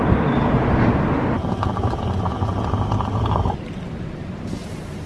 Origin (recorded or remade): recorded